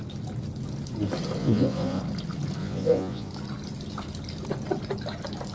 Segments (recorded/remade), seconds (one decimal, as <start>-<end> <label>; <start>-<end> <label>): 0.0-1.4 recorded; 1.4-2.0 remade; 2.0-2.6 recorded; 2.6-3.3 remade; 3.3-5.5 recorded